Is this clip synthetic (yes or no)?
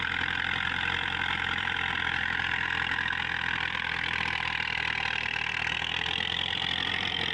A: yes